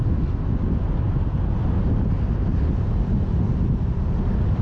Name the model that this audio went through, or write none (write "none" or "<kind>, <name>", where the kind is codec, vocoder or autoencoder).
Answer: none